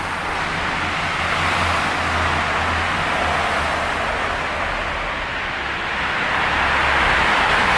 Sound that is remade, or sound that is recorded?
recorded